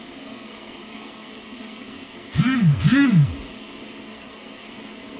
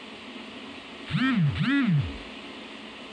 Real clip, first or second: second